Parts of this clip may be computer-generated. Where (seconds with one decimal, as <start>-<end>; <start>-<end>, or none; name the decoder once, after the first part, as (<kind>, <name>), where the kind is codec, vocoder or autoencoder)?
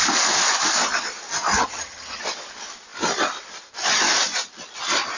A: 1.5-2.2 (vocoder, HiFi-GAN)